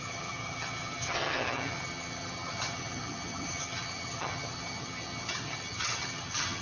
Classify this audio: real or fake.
fake